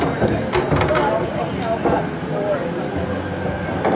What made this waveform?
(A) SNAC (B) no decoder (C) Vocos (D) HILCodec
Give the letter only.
B